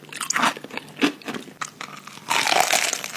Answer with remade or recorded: recorded